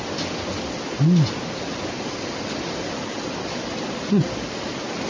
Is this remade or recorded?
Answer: recorded